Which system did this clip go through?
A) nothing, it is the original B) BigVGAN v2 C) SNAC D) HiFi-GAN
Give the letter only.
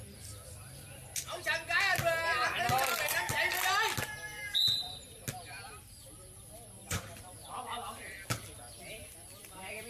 A